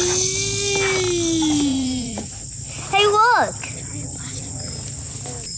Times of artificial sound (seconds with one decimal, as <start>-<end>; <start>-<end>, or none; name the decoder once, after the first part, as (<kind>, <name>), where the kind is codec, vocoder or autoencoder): 1.7-2.3 (vocoder, Vocos)